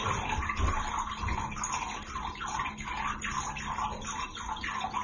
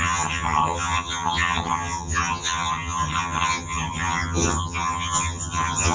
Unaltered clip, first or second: first